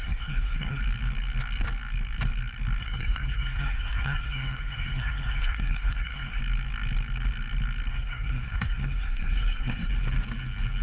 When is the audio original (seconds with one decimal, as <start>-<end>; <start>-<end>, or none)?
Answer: 0.8-2.8; 6.4-7.9; 9.9-10.8